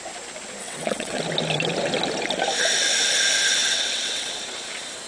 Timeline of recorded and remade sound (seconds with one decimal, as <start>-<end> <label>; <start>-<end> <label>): 0.0-0.6 recorded; 0.6-1.2 remade; 1.2-3.6 recorded; 3.6-4.3 remade; 4.3-5.1 recorded